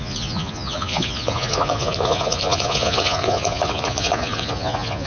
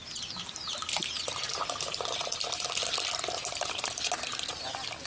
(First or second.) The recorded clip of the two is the second